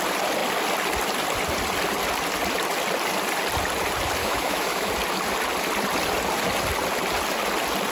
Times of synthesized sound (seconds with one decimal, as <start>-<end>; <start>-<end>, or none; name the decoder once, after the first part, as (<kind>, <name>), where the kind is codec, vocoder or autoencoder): 4.2-4.9 (autoencoder, DAC-VAE)